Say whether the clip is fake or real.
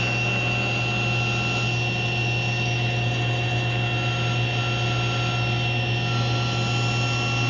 real